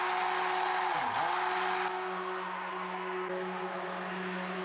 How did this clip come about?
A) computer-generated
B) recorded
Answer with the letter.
B